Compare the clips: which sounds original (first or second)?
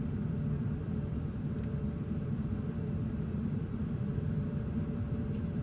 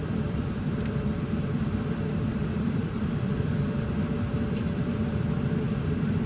first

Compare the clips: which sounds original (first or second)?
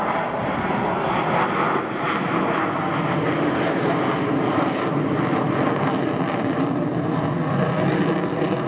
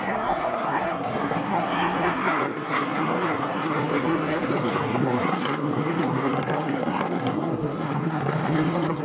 first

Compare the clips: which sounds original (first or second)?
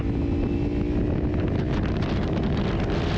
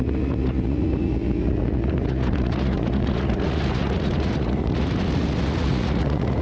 first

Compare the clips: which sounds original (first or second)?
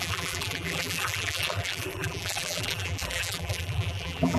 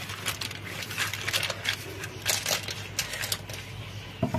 second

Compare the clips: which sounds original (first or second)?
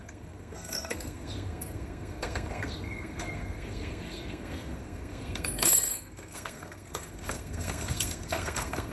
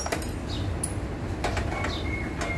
second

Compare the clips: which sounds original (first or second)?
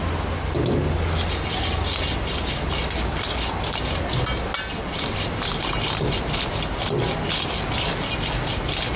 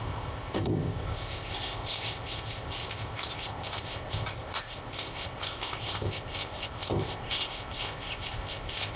first